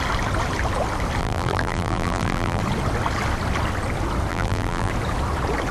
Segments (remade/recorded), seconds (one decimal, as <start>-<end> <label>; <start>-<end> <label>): 0.0-1.2 recorded; 1.2-2.6 remade; 2.6-4.3 recorded; 4.3-4.9 remade; 4.9-5.7 recorded